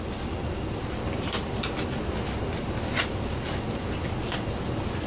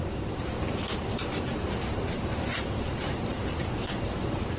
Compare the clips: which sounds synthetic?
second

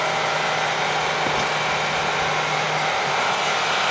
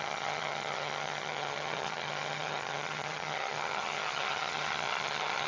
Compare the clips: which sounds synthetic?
second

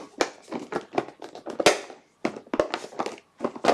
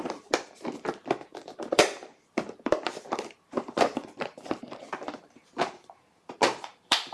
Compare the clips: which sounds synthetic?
second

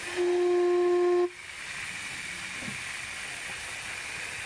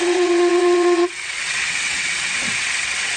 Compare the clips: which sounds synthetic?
second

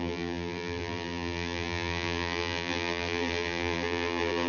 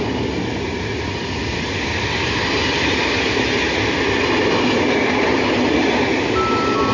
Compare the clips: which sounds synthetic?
first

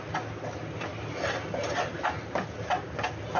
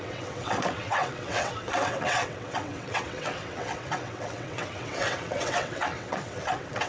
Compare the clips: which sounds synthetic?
second